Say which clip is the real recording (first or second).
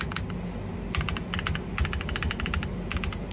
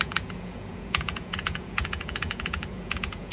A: first